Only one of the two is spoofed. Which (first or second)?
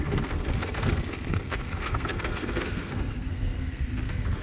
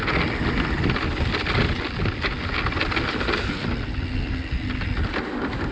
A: first